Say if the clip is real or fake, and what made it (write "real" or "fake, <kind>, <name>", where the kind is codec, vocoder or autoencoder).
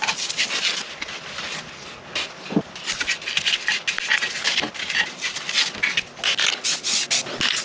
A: real